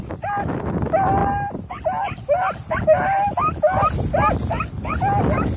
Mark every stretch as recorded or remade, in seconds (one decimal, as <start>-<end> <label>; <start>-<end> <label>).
0.0-5.6 recorded